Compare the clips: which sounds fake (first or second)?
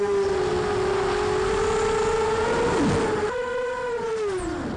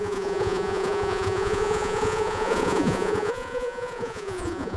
second